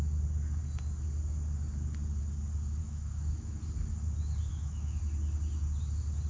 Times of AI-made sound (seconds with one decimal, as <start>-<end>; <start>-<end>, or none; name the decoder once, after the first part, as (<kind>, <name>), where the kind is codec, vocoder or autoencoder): 2.8-3.6 (autoencoder, DAC-VAE); 4.5-5.0